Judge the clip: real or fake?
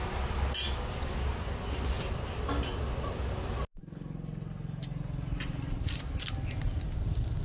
real